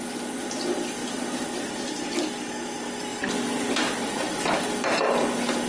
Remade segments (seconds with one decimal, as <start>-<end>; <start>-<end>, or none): none